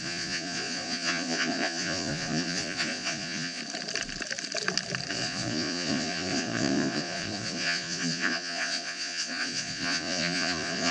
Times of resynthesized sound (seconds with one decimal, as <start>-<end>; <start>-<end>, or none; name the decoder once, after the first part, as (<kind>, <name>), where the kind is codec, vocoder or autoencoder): 0.0-3.6 (vocoder, Vocos); 5.1-10.9